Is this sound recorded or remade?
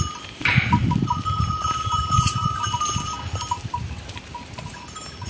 recorded